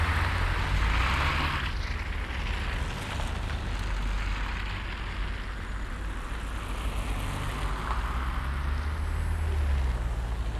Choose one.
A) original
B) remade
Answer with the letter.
A